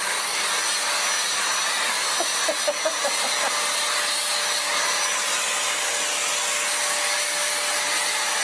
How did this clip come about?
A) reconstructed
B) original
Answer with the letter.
B